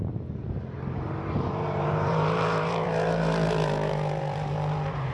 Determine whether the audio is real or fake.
fake